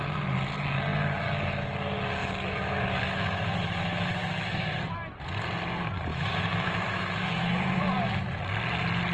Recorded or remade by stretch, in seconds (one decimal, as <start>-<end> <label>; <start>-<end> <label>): 0.0-2.2 recorded; 2.2-4.8 remade; 4.8-6.1 recorded; 6.1-7.8 remade; 7.8-9.1 recorded